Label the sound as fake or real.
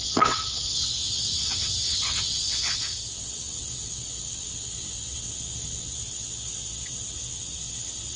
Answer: fake